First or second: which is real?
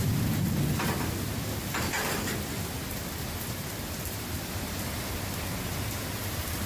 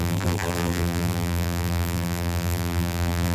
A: first